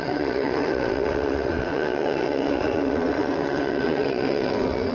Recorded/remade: remade